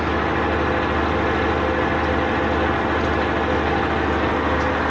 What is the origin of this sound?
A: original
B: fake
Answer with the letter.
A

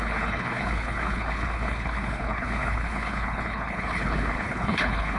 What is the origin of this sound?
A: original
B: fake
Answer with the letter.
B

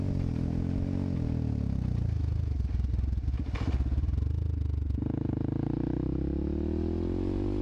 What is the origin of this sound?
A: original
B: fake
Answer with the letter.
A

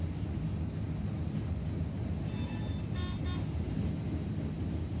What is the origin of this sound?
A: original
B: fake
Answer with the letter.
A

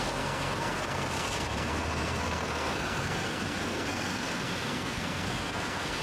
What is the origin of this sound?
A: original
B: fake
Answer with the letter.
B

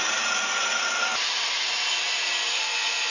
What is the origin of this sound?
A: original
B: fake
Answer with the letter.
A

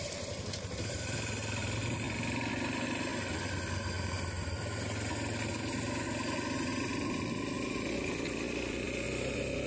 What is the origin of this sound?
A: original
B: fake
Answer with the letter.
A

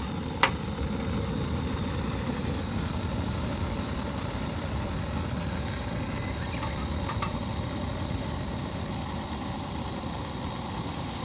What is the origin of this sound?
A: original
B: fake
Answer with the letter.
B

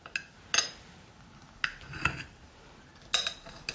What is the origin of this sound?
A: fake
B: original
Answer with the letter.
B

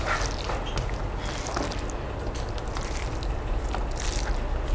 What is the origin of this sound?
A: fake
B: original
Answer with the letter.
B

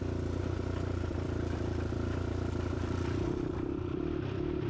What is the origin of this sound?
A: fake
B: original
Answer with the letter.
A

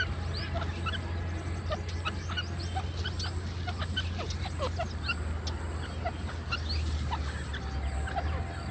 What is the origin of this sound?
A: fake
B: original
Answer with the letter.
B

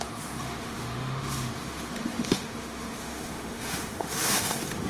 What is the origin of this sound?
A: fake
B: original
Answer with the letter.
A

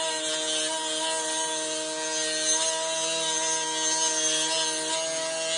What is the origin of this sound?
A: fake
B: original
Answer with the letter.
B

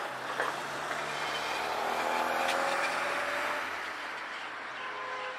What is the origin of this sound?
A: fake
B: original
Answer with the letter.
B